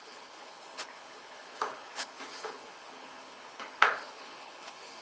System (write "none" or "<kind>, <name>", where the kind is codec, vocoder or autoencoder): codec, HILCodec